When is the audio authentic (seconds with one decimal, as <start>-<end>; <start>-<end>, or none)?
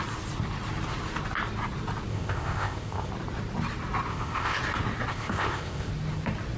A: 0.0-2.1; 3.1-4.1; 4.6-5.1; 5.9-6.6